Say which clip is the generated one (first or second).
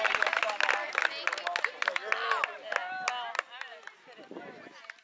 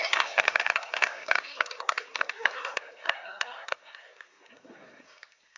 second